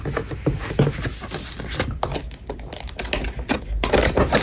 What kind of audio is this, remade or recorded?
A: recorded